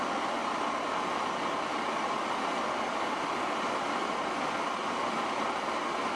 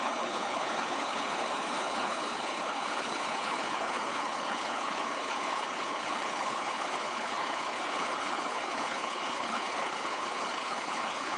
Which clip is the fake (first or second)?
second